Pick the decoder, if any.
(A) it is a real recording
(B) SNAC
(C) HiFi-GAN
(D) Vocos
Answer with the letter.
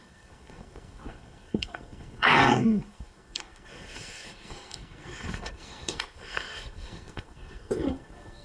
B